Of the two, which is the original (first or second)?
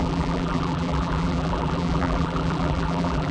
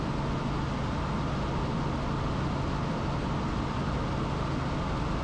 second